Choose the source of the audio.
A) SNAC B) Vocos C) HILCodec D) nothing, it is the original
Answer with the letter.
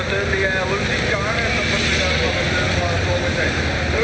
D